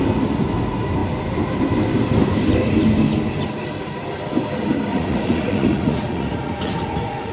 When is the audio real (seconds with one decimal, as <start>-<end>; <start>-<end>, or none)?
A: 0.0-4.9